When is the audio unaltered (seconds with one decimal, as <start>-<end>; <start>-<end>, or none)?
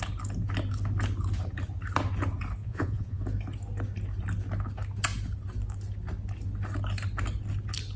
0.0-2.6; 3.2-8.0